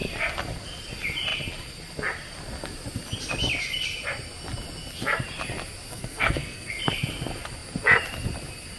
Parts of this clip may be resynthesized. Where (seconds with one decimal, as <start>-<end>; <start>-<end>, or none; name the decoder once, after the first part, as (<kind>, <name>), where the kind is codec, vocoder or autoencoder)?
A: 5.9-6.7 (codec, SNAC)